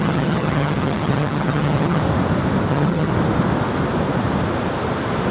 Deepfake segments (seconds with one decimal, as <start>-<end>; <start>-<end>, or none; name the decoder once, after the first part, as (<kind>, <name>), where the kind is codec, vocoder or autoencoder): 0.0-2.0 (vocoder, HiFi-GAN); 2.7-3.1